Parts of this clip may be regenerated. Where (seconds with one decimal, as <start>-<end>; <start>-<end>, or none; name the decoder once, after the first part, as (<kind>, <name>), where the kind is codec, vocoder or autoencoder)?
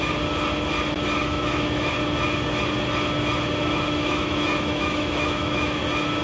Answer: 1.2-1.9 (autoencoder, DAC-VAE); 3.6-5.8